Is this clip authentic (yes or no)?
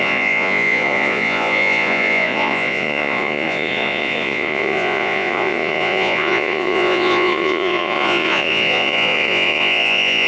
no